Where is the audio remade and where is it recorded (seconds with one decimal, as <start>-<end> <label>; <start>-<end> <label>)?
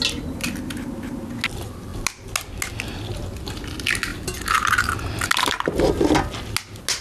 0.0-7.0 recorded